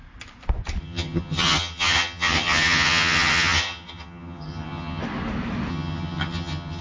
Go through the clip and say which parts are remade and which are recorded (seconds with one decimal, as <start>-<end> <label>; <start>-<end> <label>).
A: 0.0-0.8 recorded; 0.8-5.0 remade; 5.0-5.7 recorded; 5.7-6.8 remade